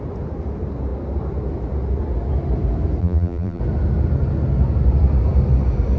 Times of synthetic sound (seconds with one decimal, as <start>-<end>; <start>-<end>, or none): 3.0-3.6